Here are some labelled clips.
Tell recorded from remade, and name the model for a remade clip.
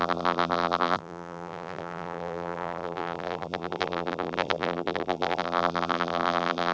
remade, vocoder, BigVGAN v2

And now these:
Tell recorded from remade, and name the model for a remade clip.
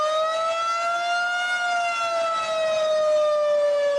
recorded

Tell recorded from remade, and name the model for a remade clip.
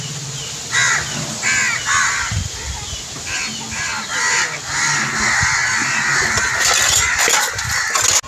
recorded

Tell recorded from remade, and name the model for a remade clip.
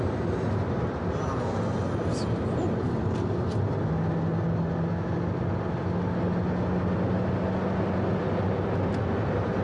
recorded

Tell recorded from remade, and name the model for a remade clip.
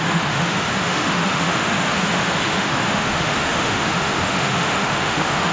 remade, autoencoder, DAC-VAE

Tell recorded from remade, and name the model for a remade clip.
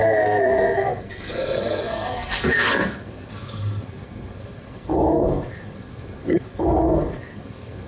remade, codec, SNAC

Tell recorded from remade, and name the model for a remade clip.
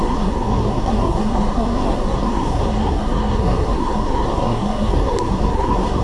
remade, codec, SNAC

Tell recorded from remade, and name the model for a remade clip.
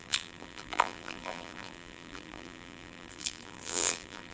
remade, vocoder, BigVGAN v2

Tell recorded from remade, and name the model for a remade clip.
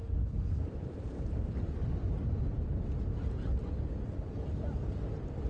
recorded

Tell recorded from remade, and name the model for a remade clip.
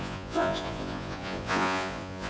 remade, vocoder, Vocos